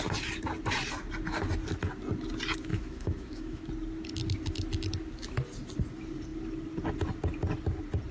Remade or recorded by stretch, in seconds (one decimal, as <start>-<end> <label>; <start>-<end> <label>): 0.0-2.7 recorded; 2.7-3.7 remade; 3.7-8.1 recorded